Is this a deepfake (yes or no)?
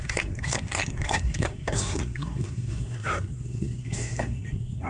yes